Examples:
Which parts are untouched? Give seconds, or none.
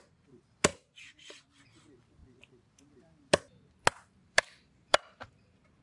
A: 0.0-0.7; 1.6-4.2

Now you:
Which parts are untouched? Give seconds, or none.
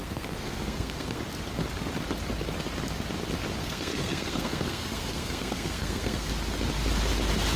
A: 1.2-3.6; 6.3-7.6